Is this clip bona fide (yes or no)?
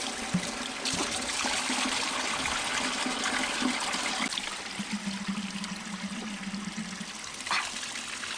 yes